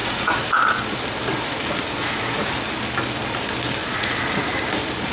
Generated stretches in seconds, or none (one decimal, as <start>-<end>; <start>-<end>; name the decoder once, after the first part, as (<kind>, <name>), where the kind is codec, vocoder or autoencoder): 0.0-0.6 (vocoder, Vocos); 2.0-2.5; 3.8-4.5